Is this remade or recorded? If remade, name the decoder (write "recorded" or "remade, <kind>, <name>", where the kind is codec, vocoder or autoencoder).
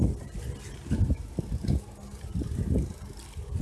recorded